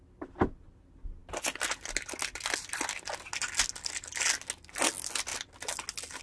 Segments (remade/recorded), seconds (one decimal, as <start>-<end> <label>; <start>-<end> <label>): 0.0-6.2 recorded